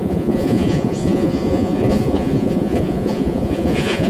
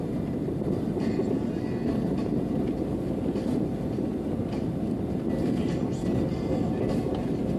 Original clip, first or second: second